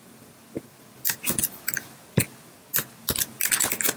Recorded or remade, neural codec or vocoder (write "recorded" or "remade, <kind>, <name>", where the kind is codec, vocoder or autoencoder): recorded